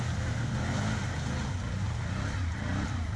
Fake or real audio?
real